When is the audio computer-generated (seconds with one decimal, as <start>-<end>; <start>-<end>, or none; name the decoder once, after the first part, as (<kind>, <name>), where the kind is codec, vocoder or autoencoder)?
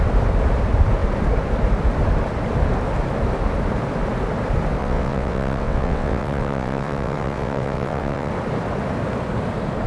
4.8-8.3 (vocoder, WaveNeXt)